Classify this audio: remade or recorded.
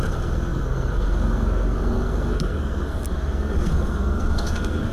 remade